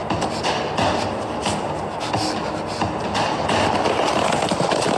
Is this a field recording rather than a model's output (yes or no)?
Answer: yes